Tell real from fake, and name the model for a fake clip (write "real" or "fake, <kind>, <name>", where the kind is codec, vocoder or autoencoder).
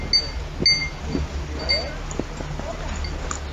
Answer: real